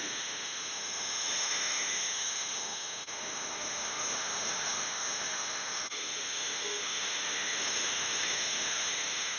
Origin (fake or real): fake